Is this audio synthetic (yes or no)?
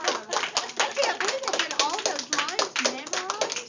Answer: no